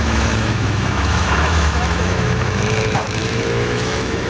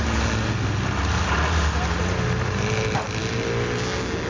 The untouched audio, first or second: second